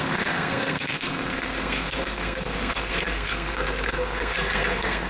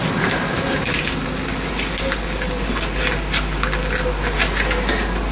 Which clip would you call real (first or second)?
second